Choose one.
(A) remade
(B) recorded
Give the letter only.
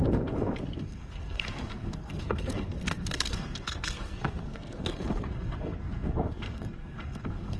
A